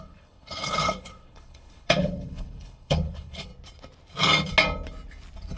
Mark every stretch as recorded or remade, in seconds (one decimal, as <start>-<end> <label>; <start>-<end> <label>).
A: 0.0-3.5 remade; 3.5-5.6 recorded